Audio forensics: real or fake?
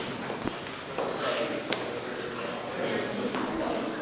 real